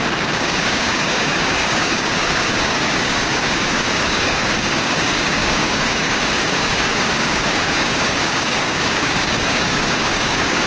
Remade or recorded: remade